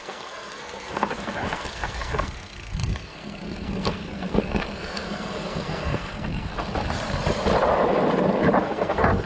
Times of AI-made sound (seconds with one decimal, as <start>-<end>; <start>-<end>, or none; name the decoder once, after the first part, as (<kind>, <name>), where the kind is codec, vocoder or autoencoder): 0.0-6.5 (codec, SNAC); 8.6-9.3